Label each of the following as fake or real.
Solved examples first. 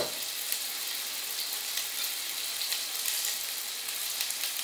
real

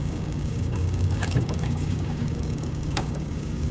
fake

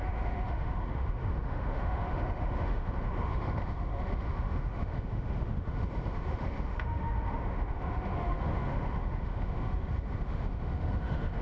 fake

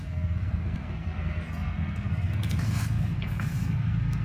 fake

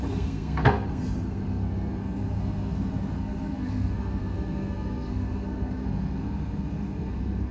fake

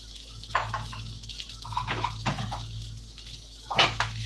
fake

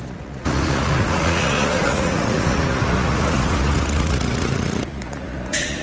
fake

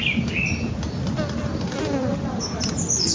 real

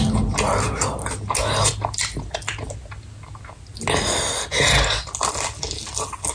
real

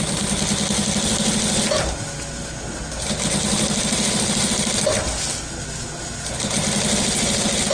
real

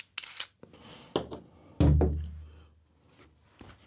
real